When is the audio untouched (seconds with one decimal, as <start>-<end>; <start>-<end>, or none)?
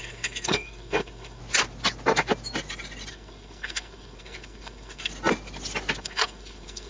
1.4-3.1; 5.1-6.0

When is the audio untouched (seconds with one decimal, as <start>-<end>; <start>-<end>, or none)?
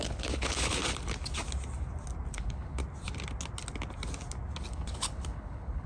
0.8-2.3; 2.8-4.7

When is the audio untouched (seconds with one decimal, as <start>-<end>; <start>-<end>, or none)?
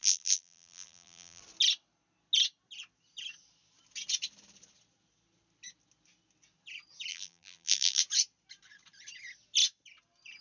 1.4-7.1; 8.0-10.4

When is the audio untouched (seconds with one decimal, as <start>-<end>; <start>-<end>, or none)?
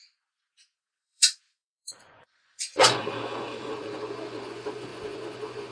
none